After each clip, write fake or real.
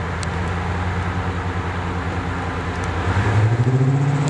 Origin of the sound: real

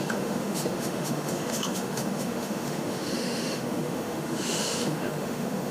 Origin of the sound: fake